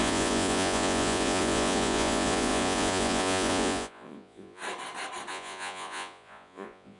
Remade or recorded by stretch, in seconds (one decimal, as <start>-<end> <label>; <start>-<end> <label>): 0.0-4.6 remade; 4.6-5.3 recorded; 5.3-7.0 remade